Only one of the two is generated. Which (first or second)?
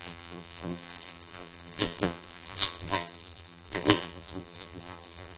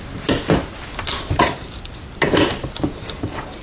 first